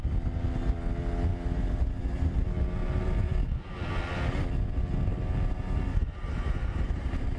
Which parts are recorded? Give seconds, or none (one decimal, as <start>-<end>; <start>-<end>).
0.0-2.8; 3.3-5.1